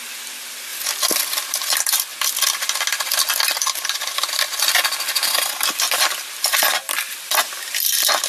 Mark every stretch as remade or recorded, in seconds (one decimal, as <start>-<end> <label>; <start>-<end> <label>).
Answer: 0.0-8.3 recorded